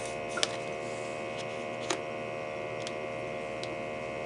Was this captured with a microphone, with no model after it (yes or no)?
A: yes